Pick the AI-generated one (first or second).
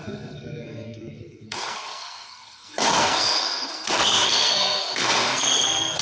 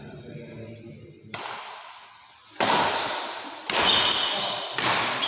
first